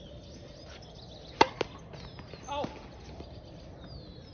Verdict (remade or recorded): recorded